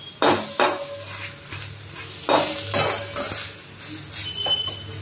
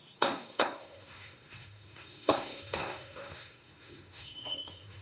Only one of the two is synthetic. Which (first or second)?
second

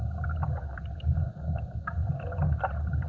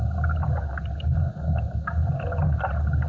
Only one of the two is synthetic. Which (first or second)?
first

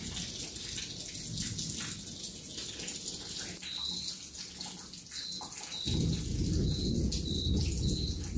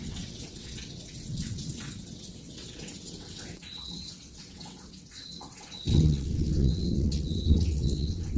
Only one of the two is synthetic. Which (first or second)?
second